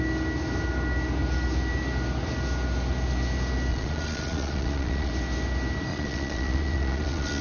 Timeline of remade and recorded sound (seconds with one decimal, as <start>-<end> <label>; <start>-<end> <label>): 0.0-3.7 recorded; 3.7-5.1 remade; 5.1-5.9 recorded; 5.9-7.4 remade